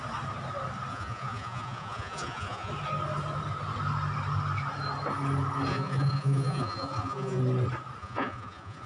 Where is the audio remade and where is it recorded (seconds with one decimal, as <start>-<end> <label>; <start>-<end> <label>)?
0.0-0.9 recorded; 0.9-2.7 remade; 2.7-5.7 recorded; 5.7-7.4 remade; 7.4-8.0 recorded; 8.0-8.9 remade